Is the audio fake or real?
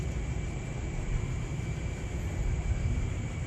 fake